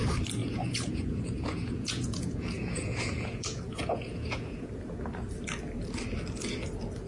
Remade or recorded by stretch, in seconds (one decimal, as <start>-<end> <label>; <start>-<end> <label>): 0.0-0.4 recorded; 0.4-4.7 remade; 4.7-7.1 recorded